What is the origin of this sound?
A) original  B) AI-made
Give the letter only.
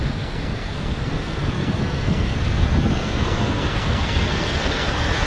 B